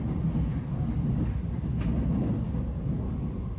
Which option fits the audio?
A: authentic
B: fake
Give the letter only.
A